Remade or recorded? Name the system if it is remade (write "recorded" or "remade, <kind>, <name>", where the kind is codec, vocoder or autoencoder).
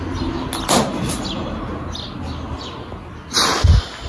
recorded